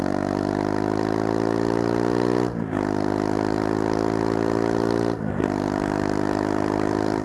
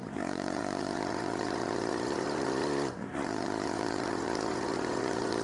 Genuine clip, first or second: first